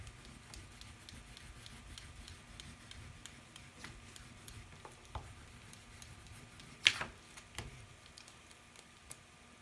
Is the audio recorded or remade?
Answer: recorded